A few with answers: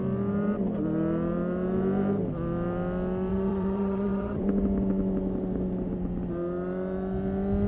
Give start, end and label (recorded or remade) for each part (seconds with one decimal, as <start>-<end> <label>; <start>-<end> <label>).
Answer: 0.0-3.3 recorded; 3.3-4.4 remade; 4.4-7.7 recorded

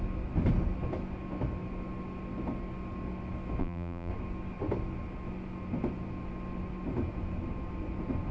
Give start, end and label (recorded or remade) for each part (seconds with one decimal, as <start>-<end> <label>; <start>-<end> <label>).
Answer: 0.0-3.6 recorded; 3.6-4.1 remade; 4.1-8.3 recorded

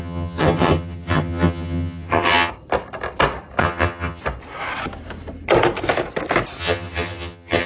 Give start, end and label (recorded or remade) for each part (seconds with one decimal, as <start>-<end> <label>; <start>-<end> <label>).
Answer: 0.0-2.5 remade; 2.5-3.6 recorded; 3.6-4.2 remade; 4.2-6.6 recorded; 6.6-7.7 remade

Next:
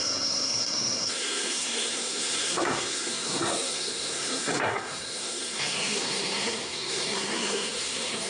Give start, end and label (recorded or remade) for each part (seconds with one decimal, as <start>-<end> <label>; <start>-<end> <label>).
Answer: 0.0-8.3 remade

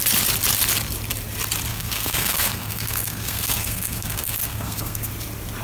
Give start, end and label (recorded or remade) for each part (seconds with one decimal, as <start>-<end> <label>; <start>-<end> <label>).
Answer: 0.0-1.7 recorded; 1.7-5.1 remade; 5.1-5.6 recorded